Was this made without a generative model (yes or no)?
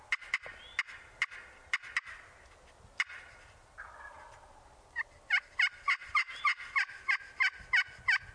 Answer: yes